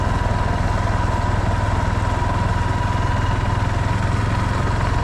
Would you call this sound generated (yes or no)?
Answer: no